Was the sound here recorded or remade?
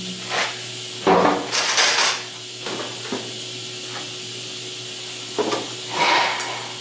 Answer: recorded